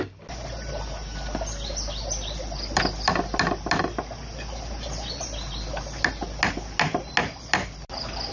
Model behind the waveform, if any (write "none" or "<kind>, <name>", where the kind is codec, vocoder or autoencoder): none